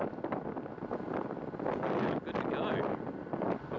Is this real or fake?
real